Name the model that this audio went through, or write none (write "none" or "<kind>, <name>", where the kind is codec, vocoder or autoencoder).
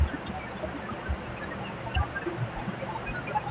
none